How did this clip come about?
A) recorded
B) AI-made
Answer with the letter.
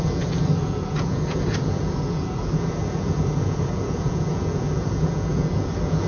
B